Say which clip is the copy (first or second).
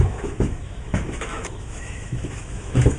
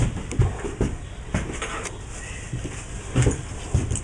first